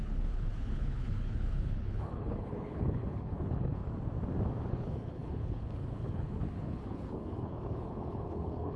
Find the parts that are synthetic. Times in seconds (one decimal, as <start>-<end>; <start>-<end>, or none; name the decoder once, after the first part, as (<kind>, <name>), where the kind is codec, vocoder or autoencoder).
0.0-3.8 (codec, HILCodec); 4.7-8.8